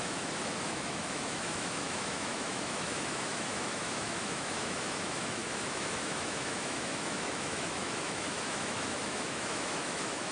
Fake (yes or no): yes